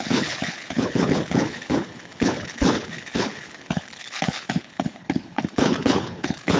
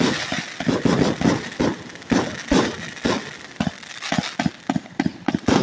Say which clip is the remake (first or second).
first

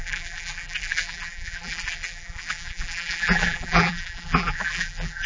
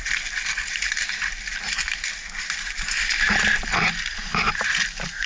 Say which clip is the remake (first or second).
first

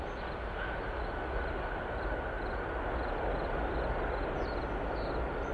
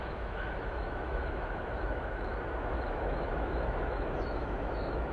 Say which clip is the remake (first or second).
second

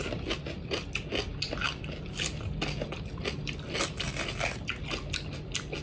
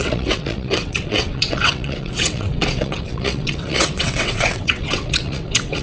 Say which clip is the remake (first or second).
second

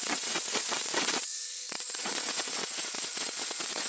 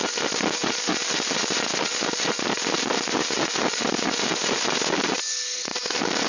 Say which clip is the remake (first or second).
first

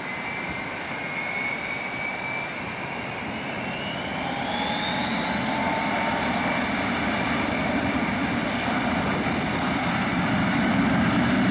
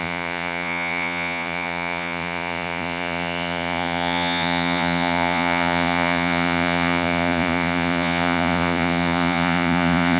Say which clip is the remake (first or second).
second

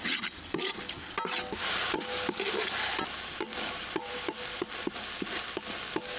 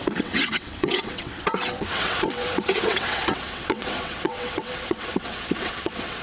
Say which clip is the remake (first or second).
second